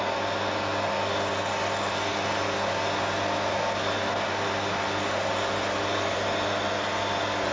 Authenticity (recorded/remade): recorded